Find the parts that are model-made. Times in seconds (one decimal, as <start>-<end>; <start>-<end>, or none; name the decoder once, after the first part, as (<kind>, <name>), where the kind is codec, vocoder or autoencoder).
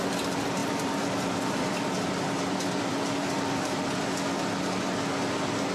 0.6-3.7 (vocoder, BigVGAN v2)